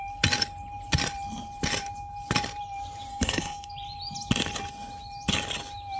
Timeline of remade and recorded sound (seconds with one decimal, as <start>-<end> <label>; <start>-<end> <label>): 0.0-3.1 recorded; 3.1-3.7 remade; 3.7-6.0 recorded